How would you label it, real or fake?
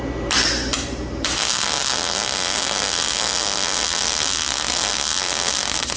real